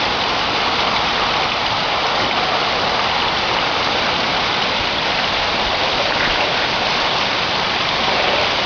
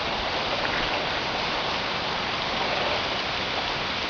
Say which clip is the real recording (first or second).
second